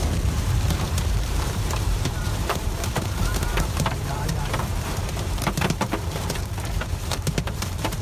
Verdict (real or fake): fake